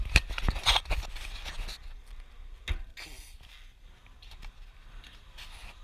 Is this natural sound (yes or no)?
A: yes